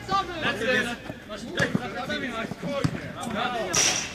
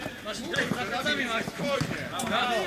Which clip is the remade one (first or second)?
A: first